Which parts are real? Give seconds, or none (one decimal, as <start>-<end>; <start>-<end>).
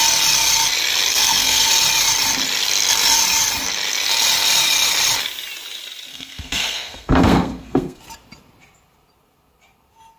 0.0-1.1; 1.7-6.1; 8.0-10.2